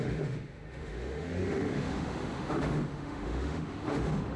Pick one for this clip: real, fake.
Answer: fake